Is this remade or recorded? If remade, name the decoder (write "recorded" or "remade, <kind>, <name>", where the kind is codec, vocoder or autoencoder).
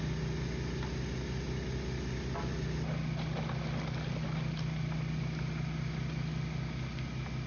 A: recorded